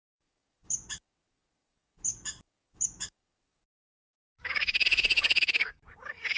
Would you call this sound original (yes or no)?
no